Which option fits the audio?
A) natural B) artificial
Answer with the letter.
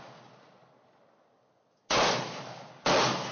A